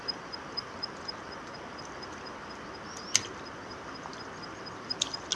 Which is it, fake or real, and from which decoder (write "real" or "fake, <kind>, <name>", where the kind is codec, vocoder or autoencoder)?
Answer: real